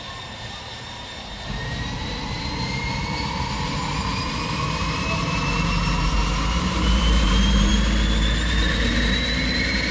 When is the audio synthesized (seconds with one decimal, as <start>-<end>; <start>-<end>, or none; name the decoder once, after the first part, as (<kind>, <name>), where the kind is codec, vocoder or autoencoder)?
0.0-7.7 (vocoder, BigVGAN v2); 8.5-9.9